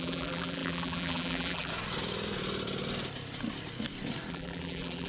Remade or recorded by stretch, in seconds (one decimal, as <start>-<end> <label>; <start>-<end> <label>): 0.0-1.7 remade; 1.7-4.3 recorded; 4.3-5.1 remade